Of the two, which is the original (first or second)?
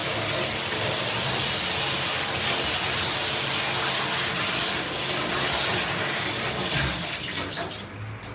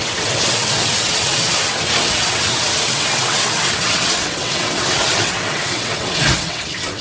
first